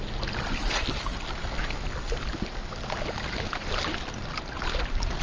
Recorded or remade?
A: recorded